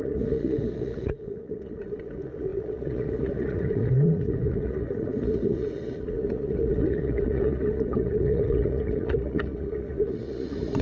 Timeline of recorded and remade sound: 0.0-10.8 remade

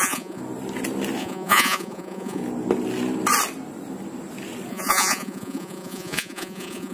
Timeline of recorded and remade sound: 0.0-0.4 remade; 0.4-1.2 recorded; 1.2-2.4 remade; 2.4-4.7 recorded; 4.7-6.9 remade

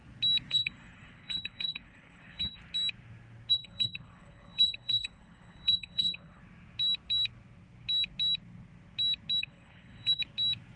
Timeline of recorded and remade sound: 0.0-0.5 recorded; 0.5-2.6 remade; 2.6-3.5 recorded; 3.5-6.4 remade; 6.4-9.4 recorded; 9.4-10.2 remade; 10.2-10.8 recorded

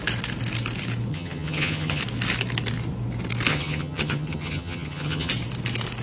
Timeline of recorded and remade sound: 0.0-1.1 recorded; 1.1-2.0 remade; 2.0-3.5 recorded; 3.5-5.3 remade; 5.3-6.0 recorded

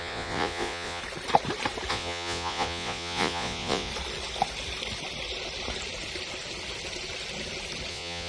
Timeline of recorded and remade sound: 0.0-1.0 remade; 1.0-1.9 recorded; 1.9-3.9 remade; 3.9-7.9 recorded; 7.9-8.3 remade